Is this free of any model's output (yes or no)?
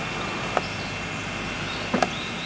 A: yes